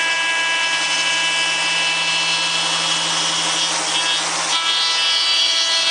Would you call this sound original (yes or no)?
yes